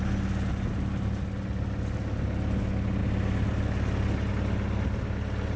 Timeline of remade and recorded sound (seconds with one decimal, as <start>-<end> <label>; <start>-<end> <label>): 0.0-5.6 recorded